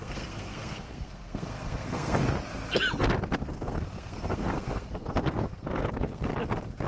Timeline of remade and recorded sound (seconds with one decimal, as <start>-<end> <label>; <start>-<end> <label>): 0.0-2.2 remade; 2.2-3.4 recorded; 3.4-6.3 remade; 6.3-6.9 recorded